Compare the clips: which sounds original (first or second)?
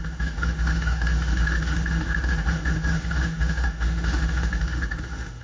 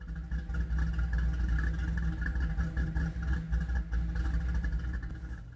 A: second